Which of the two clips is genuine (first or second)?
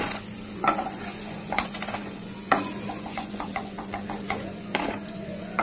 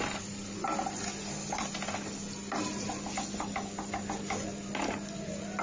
second